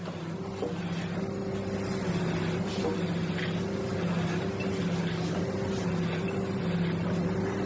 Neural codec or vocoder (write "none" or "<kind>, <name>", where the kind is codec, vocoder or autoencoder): none